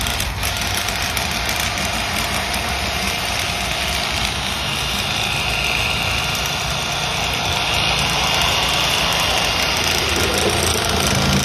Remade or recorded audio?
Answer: recorded